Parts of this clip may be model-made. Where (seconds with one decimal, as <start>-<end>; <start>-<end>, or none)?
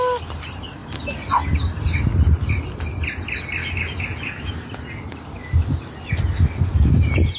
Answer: 3.6-4.5